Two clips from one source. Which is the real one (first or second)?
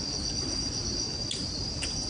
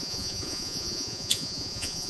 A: first